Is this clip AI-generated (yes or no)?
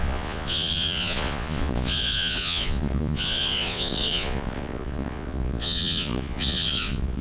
yes